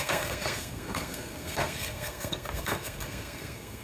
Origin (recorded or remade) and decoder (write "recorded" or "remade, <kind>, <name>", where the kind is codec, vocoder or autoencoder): remade, codec, SNAC